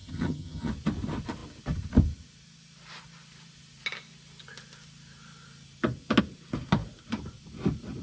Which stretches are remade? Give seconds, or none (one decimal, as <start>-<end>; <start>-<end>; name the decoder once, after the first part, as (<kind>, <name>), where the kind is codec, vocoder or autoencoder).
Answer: 0.0-0.7 (vocoder, HiFi-GAN)